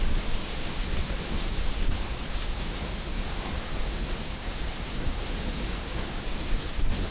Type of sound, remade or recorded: remade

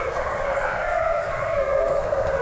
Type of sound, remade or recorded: remade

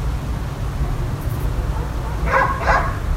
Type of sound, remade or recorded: recorded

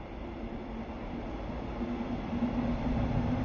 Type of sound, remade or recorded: recorded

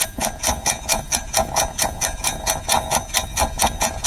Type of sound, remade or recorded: remade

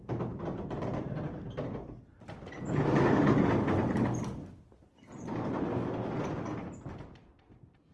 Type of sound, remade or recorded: recorded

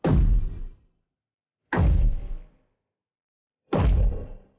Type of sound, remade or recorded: recorded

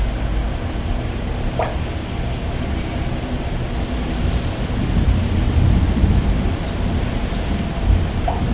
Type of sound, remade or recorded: recorded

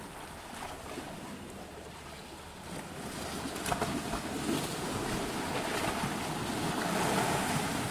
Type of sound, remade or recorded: recorded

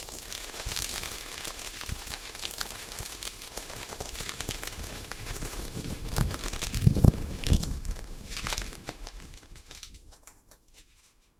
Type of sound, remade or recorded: remade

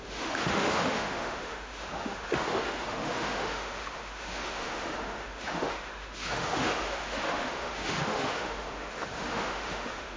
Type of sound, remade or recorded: remade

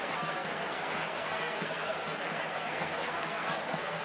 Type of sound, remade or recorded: remade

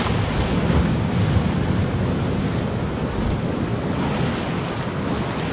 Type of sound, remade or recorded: recorded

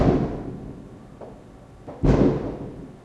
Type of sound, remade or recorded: recorded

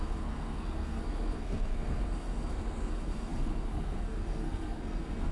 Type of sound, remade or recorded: remade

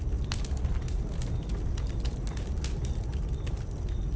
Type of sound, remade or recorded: recorded